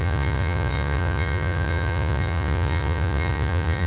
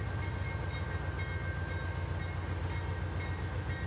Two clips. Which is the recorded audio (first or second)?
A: second